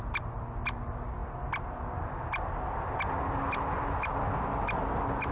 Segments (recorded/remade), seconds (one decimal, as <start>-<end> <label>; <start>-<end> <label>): 0.0-5.3 recorded